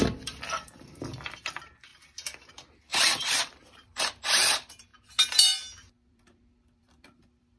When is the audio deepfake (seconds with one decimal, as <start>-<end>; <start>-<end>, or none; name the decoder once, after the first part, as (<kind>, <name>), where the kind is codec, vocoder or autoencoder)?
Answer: 0.0-1.9 (vocoder, BigVGAN v2); 2.5-4.9; 6.1-7.6

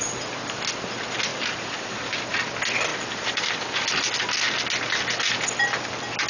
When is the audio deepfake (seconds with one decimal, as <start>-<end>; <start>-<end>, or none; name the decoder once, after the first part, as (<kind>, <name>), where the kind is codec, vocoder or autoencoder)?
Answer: 1.3-2.5 (vocoder, BigVGAN v2); 2.9-3.5

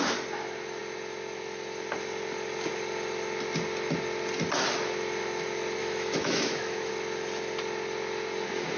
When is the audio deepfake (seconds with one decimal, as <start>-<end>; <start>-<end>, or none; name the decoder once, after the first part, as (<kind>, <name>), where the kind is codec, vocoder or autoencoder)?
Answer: 5.8-6.9 (autoencoder, DAC-VAE)

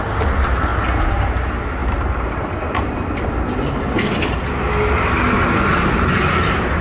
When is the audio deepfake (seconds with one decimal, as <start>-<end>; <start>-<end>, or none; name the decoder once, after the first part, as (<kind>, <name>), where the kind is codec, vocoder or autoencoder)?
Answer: 1.8-3.3 (vocoder, BigVGAN v2)

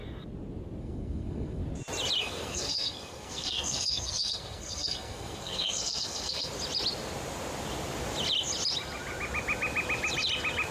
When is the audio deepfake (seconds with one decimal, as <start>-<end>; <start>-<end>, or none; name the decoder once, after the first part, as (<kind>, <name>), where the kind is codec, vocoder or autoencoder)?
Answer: 0.8-1.6 (codec, SNAC); 2.2-6.5

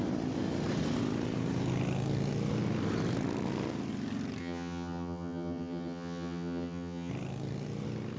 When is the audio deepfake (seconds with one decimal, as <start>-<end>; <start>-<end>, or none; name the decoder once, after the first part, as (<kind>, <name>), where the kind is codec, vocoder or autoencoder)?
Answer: 4.4-7.1 (vocoder, HiFi-GAN)